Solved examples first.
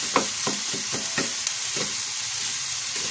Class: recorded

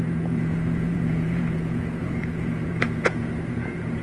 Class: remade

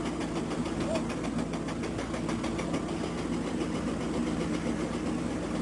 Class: recorded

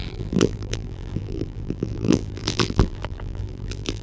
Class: remade